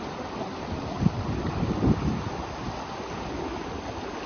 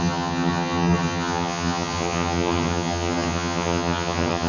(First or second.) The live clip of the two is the first